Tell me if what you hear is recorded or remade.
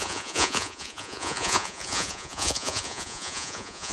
remade